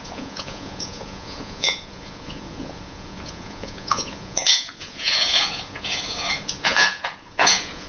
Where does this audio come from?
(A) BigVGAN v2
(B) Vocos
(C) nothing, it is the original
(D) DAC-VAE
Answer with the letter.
B